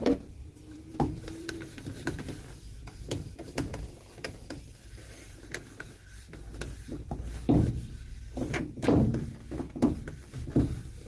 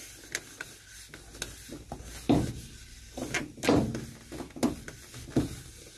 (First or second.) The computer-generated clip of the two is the first